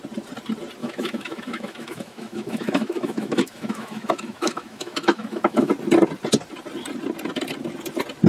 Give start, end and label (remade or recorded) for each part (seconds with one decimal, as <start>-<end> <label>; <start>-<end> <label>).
0.0-0.8 recorded; 0.8-5.7 remade; 5.7-8.3 recorded